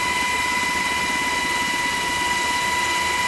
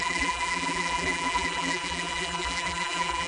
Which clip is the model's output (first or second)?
second